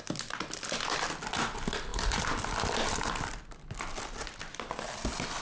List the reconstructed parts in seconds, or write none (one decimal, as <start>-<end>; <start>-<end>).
none